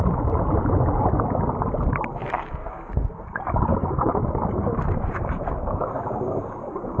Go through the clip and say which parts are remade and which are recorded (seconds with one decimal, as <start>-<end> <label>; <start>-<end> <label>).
0.0-2.2 recorded; 2.2-2.8 remade; 2.8-3.7 recorded; 3.7-7.0 remade